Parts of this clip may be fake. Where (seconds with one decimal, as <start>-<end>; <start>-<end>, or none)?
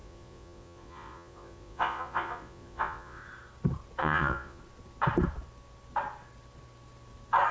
0.0-3.2; 4.0-4.6